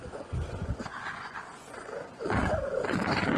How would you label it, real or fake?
fake